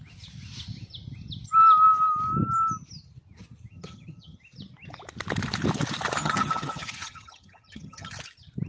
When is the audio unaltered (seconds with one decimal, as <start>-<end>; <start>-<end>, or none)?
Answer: 0.0-3.7; 4.4-6.2; 8.1-8.7